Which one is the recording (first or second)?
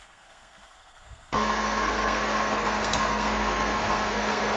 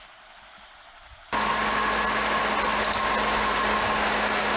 second